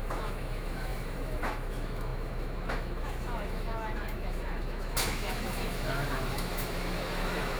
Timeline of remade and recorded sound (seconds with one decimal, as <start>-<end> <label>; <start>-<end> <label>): 0.0-7.6 remade